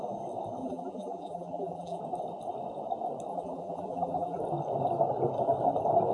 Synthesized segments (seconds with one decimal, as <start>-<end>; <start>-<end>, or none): 0.6-2.0; 3.3-4.4